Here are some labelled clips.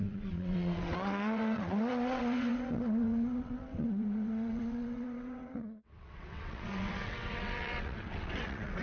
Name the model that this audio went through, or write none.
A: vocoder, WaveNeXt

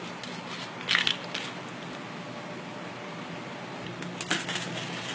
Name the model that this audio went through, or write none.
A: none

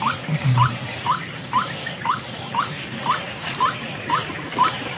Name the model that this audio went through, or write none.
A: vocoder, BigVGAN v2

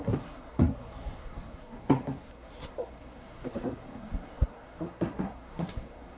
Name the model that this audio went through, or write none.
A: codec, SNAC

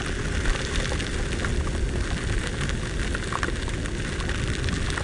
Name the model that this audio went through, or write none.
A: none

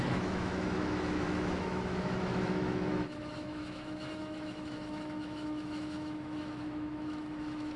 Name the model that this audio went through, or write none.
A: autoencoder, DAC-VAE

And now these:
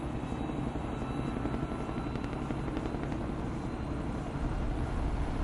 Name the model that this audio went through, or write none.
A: none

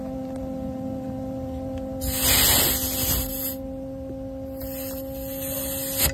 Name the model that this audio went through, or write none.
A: none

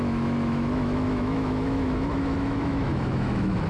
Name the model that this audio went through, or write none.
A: autoencoder, DAC-VAE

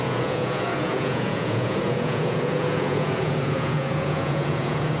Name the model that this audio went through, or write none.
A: vocoder, Vocos